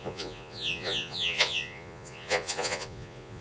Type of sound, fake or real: fake